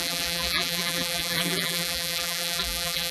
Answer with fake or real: fake